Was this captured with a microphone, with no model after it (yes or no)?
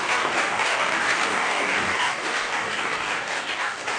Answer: no